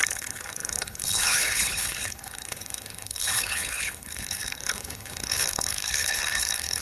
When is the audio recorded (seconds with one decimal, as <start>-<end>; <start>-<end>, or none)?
none